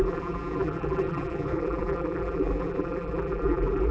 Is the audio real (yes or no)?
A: no